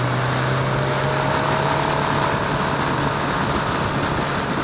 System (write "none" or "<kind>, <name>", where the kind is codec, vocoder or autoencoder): none